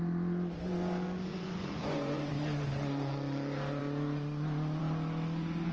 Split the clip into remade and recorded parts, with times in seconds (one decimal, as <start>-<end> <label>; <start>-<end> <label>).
0.0-1.3 recorded; 1.3-2.3 remade; 2.3-5.7 recorded